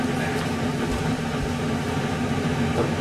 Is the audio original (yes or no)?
yes